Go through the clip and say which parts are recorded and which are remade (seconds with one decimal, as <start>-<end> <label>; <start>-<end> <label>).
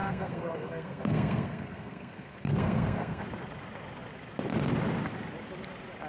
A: 0.0-3.2 remade; 3.2-6.1 recorded